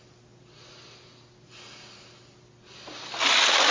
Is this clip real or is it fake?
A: real